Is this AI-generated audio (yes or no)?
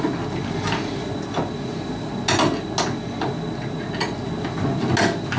no